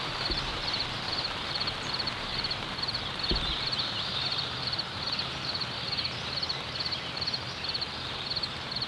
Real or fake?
fake